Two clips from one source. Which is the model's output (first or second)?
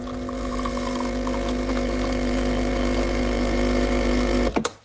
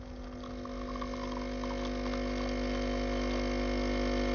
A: first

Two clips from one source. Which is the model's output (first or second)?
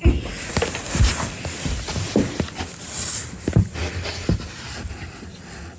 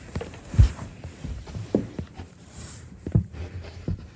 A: second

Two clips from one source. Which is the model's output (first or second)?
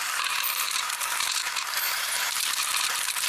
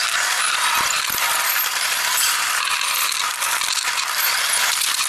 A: first